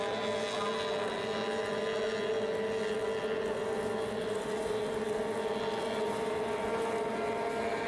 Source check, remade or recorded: recorded